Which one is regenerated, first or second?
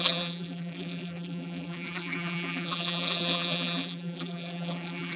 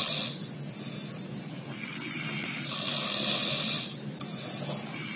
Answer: first